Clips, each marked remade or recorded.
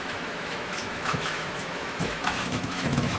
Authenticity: remade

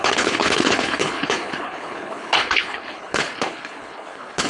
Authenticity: remade